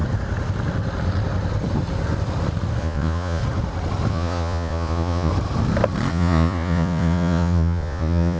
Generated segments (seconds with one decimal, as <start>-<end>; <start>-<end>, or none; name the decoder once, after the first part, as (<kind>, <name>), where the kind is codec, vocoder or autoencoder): 2.8-3.4 (vocoder, Vocos); 4.1-5.3; 6.1-8.4